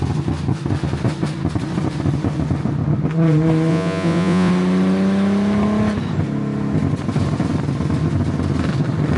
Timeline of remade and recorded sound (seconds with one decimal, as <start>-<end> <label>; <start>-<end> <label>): 0.0-3.7 recorded; 3.7-4.5 remade; 4.5-9.2 recorded